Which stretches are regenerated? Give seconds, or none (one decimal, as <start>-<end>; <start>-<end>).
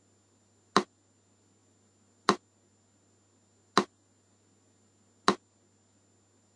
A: none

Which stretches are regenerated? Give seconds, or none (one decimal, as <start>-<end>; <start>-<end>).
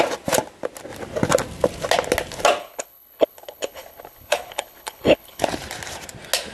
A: 2.6-5.4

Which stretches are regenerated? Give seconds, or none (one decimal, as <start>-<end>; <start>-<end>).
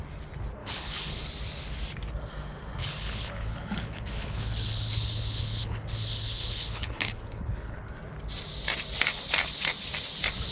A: 0.6-1.3; 2.8-7.9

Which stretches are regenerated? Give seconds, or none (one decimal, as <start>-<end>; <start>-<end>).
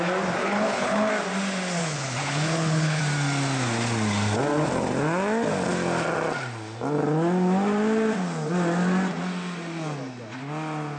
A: 0.4-1.1; 1.8-3.0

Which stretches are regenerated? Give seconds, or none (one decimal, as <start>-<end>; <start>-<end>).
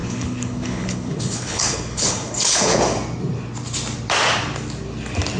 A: 0.0-2.8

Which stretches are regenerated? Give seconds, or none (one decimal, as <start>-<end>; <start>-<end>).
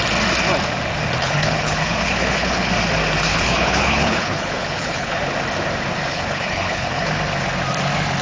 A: 1.2-2.7; 3.3-5.2; 6.1-7.1